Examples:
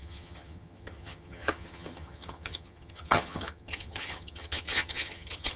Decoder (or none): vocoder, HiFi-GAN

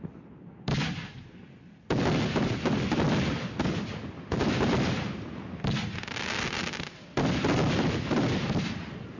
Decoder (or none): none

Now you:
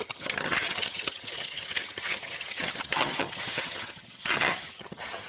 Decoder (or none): vocoder, HiFi-GAN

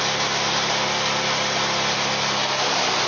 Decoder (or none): none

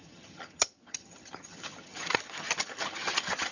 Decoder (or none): vocoder, HiFi-GAN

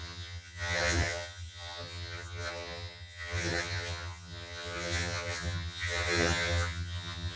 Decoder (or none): vocoder, HiFi-GAN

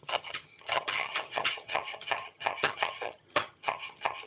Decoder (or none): vocoder, HiFi-GAN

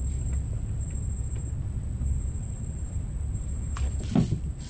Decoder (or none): none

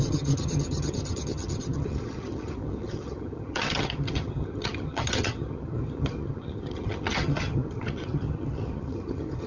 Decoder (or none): vocoder, HiFi-GAN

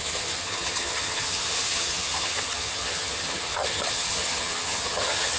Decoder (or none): vocoder, HiFi-GAN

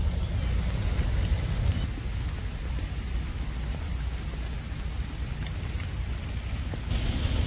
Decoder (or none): none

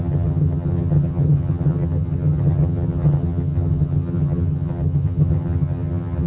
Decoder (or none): vocoder, HiFi-GAN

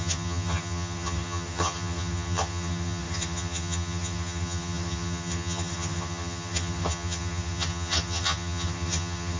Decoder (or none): vocoder, HiFi-GAN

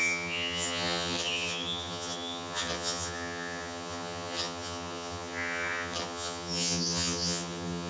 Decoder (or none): vocoder, HiFi-GAN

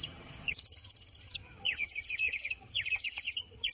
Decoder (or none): vocoder, HiFi-GAN